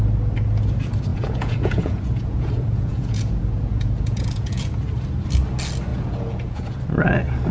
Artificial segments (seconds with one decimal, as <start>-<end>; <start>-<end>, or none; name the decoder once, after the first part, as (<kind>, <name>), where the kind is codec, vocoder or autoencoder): 1.1-4.7 (vocoder, Vocos); 5.9-6.8